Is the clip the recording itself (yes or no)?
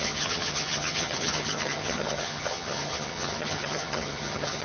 no